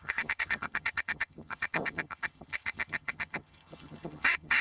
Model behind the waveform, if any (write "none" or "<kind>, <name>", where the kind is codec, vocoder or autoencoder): vocoder, HiFi-GAN